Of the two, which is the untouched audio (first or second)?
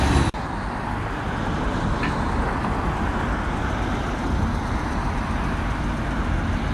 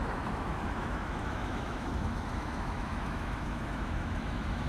first